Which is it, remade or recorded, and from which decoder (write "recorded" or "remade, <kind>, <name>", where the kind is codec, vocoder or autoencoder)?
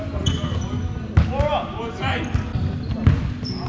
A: recorded